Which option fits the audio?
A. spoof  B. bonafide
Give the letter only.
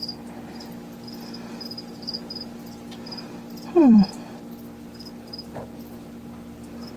A